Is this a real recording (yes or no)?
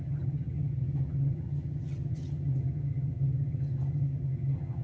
no